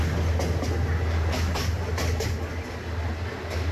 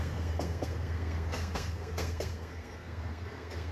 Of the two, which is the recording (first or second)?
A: first